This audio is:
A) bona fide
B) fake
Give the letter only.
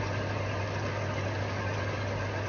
A